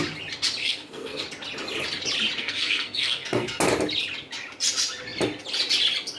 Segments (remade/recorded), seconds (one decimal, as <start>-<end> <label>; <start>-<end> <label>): 0.0-0.6 recorded; 0.6-1.2 remade; 1.2-2.4 recorded; 2.4-3.6 remade; 3.6-6.2 recorded